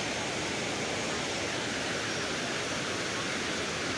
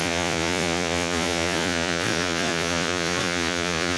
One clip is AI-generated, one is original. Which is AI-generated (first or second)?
second